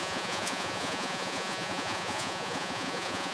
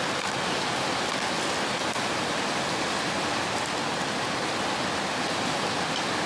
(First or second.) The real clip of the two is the second